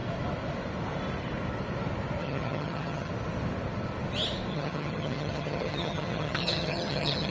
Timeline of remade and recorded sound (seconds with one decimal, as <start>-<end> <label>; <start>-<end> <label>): 0.0-2.2 recorded; 2.2-3.1 remade; 3.1-4.5 recorded; 4.5-7.3 remade